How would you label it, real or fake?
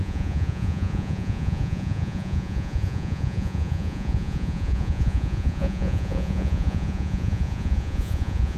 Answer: fake